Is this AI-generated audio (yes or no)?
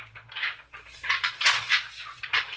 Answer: no